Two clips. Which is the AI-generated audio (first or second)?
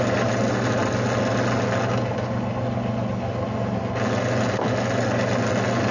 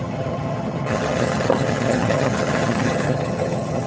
second